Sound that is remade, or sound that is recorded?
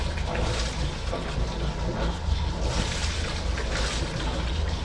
recorded